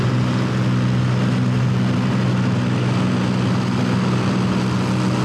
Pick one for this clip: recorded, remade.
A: recorded